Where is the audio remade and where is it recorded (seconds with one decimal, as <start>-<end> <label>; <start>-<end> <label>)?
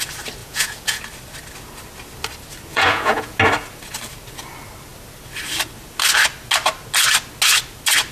0.0-0.4 recorded; 0.4-1.0 remade; 1.0-2.7 recorded; 2.7-3.4 remade; 3.4-8.1 recorded